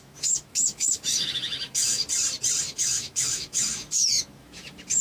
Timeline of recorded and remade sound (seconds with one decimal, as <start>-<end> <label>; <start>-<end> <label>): 0.0-2.0 remade; 2.0-2.7 recorded; 2.7-5.0 remade